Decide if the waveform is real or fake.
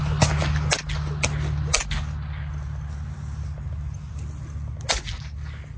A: real